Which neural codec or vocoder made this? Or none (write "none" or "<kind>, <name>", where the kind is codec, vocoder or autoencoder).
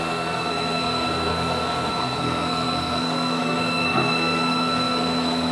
codec, SNAC